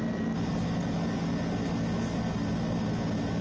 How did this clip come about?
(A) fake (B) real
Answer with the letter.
B